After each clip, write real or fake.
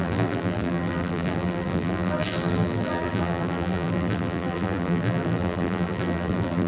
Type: fake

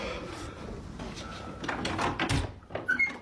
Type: real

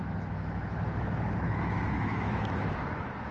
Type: fake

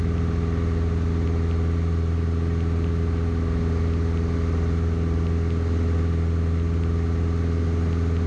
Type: real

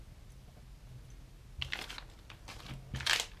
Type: real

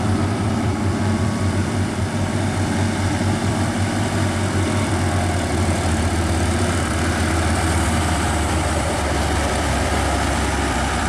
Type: fake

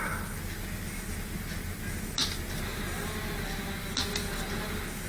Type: real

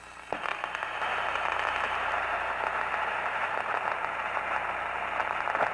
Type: real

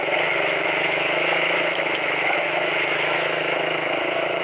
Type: fake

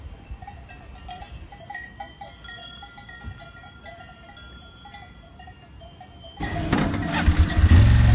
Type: fake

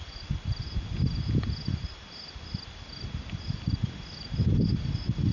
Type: real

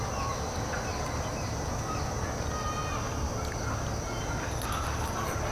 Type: real